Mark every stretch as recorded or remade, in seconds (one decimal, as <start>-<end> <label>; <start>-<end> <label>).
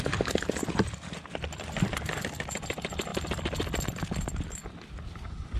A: 0.0-5.6 recorded